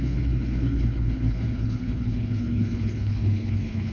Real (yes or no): no